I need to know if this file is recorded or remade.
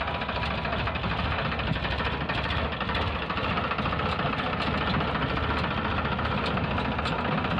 recorded